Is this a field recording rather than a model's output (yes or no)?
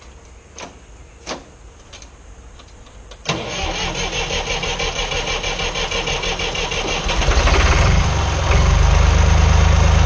yes